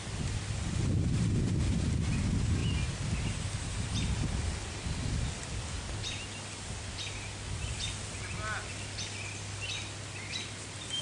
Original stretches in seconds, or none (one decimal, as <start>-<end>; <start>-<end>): 0.0-11.0